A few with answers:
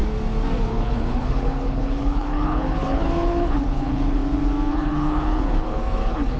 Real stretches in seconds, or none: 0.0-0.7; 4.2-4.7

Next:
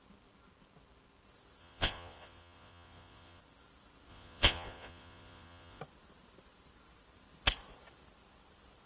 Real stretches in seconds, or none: 0.0-1.6; 3.4-4.1; 5.8-8.9

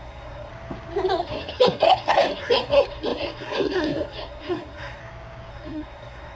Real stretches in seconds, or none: 0.5-1.2; 5.0-5.5